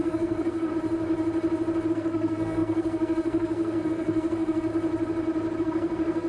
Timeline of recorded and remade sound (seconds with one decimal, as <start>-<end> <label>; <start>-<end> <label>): 0.0-0.7 remade; 0.7-1.9 recorded; 1.9-4.7 remade; 4.7-5.6 recorded; 5.6-6.3 remade